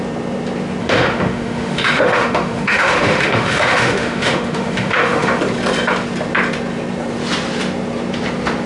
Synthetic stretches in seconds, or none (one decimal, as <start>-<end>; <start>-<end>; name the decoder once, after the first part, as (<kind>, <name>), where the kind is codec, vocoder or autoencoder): 0.8-5.4 (autoencoder, DAC-VAE)